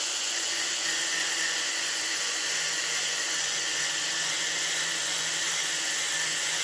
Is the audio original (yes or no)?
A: no